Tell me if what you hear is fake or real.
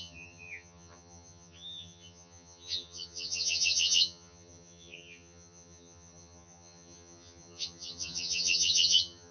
fake